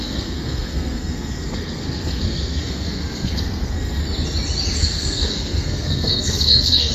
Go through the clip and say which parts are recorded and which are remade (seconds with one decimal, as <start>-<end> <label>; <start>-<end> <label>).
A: 0.0-4.0 remade; 4.0-4.8 recorded; 4.8-6.9 remade